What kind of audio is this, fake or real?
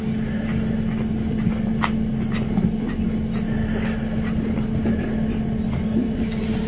real